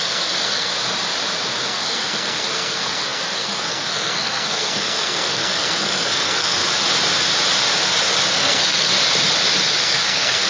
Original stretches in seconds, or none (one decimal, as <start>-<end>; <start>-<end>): 0.7-1.6; 6.6-8.3; 8.9-9.8